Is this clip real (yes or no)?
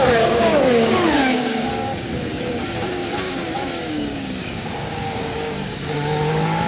no